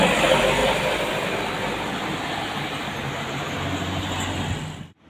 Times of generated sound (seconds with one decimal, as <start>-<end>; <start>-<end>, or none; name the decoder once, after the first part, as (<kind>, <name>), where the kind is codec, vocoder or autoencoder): none